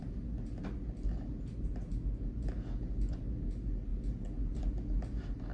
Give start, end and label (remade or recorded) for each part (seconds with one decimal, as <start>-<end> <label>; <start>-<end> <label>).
0.0-5.5 recorded

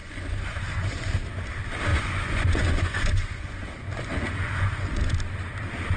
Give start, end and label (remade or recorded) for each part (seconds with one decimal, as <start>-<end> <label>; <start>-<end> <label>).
0.0-1.1 remade; 1.1-1.9 recorded; 1.9-5.0 remade; 5.0-6.0 recorded

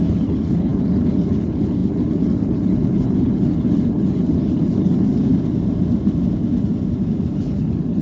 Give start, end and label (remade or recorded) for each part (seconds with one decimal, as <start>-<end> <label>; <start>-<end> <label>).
0.0-5.3 remade; 5.3-7.3 recorded; 7.3-8.0 remade

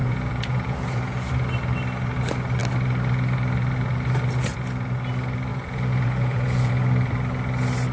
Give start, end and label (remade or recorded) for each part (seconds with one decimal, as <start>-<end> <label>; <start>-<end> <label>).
0.0-1.3 remade; 1.3-5.5 recorded; 5.5-6.7 remade; 6.7-7.9 recorded

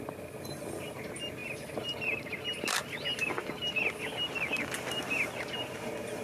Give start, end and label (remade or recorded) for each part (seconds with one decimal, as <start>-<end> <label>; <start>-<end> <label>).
0.0-6.2 recorded

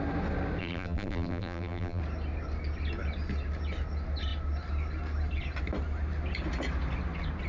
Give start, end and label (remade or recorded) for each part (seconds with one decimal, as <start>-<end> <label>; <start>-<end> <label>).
0.0-0.6 recorded; 0.6-2.0 remade; 2.0-7.5 recorded

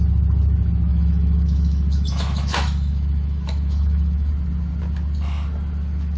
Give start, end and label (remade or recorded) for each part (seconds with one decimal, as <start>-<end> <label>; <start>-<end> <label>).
0.0-0.9 recorded; 0.9-4.3 remade; 4.3-6.2 recorded

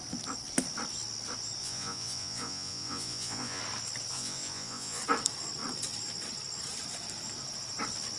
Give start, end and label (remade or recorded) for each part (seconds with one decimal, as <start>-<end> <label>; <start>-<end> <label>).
0.0-1.6 recorded; 1.6-3.6 remade; 3.6-4.1 recorded; 4.1-5.0 remade; 5.0-8.2 recorded